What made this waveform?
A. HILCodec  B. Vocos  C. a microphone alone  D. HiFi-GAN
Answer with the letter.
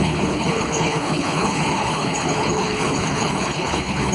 A